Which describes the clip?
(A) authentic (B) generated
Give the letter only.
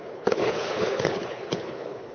B